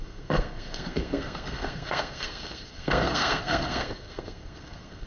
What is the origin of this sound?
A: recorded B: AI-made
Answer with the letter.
B